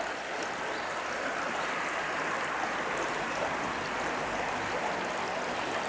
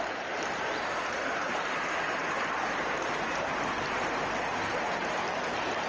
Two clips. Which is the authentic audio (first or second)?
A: first